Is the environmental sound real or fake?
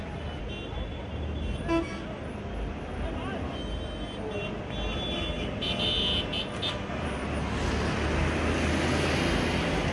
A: real